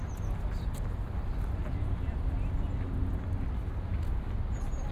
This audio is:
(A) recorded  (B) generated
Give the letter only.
A